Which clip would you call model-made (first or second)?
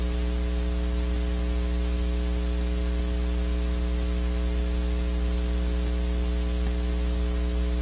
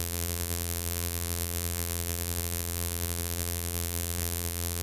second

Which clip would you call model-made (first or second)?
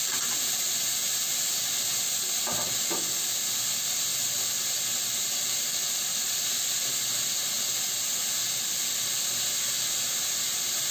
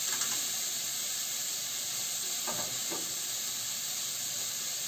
second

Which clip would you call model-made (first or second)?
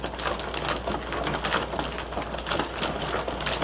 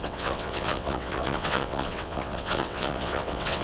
second